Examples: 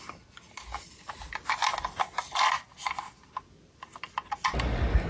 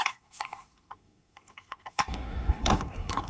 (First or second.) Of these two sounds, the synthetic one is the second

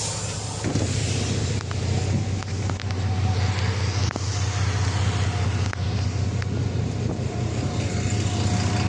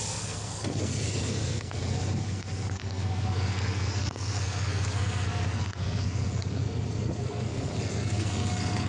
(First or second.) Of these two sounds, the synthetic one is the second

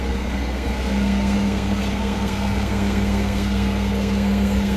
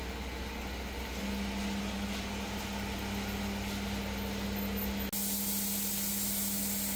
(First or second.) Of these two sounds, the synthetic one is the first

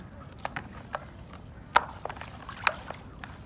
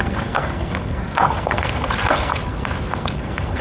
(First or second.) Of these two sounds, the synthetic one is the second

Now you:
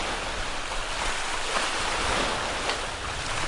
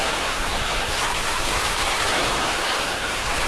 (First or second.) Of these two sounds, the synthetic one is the second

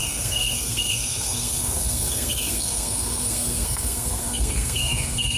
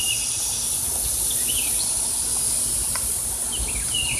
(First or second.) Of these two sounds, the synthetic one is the first